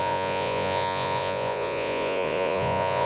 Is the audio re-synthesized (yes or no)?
yes